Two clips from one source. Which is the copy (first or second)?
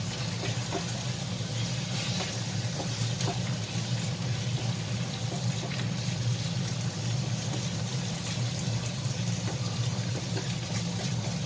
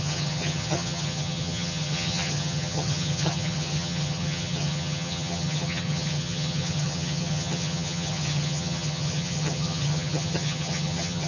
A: second